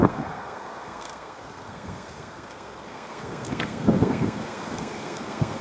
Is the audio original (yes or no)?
no